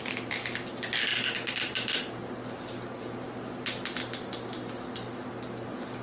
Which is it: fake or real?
real